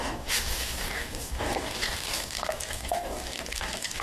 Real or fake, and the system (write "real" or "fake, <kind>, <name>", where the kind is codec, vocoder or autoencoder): fake, codec, DAC